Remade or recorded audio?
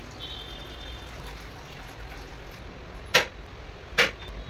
recorded